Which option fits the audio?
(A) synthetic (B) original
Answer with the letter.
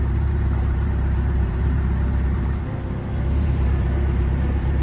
A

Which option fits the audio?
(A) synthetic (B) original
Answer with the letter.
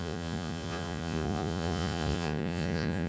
A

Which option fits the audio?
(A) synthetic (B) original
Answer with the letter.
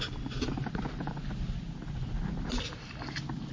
B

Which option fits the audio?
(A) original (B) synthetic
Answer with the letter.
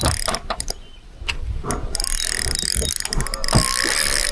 A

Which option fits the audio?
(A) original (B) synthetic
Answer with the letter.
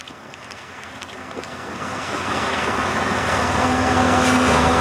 B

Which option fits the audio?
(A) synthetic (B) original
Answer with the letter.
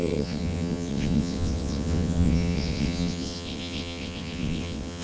A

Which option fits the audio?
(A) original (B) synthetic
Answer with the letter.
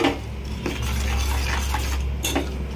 A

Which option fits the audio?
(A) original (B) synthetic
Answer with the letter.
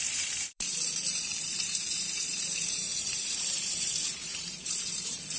B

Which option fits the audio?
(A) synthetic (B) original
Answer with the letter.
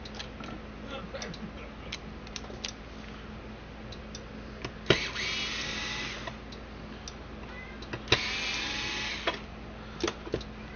B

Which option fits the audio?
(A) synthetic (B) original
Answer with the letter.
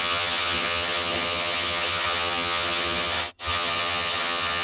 A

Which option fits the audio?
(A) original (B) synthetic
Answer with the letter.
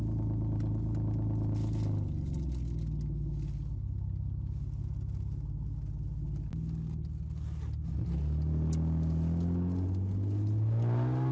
A